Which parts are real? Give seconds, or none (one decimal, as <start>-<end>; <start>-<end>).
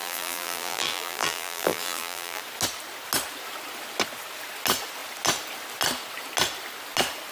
2.4-7.3